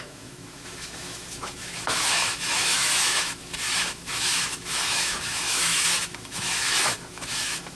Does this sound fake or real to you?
fake